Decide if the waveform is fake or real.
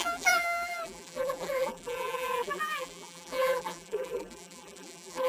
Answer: fake